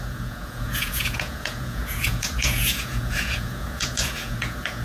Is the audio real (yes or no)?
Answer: no